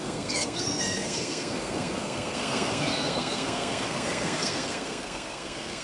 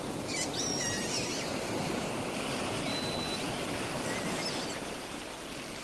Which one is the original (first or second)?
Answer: second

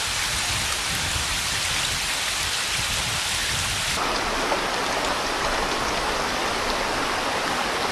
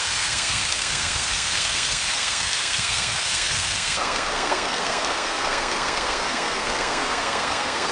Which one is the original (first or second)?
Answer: first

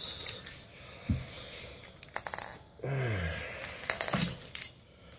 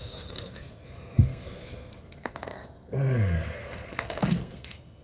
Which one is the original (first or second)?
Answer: first